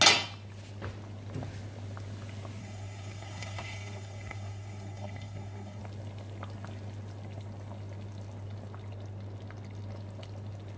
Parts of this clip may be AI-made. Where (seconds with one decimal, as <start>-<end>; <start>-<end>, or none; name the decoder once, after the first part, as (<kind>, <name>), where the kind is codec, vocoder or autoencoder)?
2.6-5.8 (codec, SNAC)